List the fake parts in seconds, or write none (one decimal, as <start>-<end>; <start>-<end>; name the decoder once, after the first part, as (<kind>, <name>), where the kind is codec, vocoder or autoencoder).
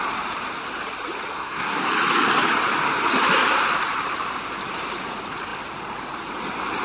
1.3-1.9 (codec, SNAC)